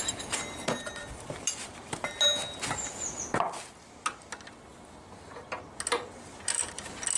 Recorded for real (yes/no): yes